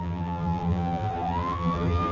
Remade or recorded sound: remade